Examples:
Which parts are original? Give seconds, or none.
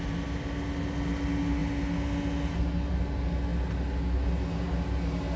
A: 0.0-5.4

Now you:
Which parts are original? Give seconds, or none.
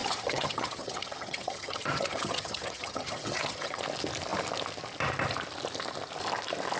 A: 3.8-6.8